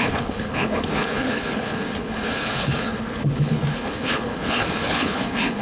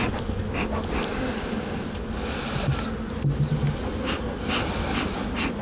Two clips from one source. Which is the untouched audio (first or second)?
second